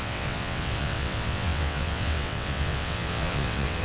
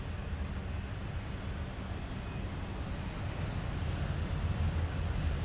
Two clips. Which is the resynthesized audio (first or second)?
first